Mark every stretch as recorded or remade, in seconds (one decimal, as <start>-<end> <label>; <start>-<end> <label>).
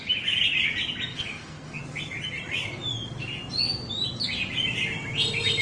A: 0.0-1.1 recorded; 1.1-1.8 remade; 1.8-5.6 recorded